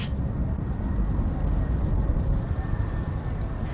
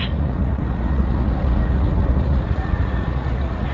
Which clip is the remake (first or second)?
second